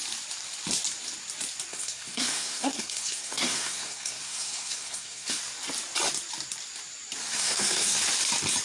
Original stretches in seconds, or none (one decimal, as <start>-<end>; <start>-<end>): 0.0-1.7; 5.4-7.2; 8.0-8.6